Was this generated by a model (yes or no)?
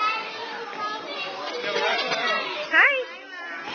no